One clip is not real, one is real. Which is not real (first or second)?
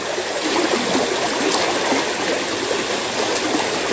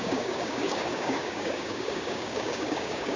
second